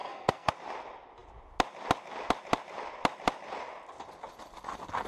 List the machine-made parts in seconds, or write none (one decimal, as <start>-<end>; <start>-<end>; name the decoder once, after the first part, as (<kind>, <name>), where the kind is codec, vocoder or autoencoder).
0.0-0.5 (codec, SNAC)